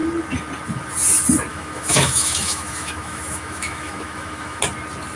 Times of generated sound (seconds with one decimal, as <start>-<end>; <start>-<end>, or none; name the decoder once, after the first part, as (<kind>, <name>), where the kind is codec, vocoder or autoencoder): 1.5-4.6 (autoencoder, DAC-VAE)